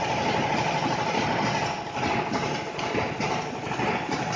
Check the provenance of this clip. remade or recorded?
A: recorded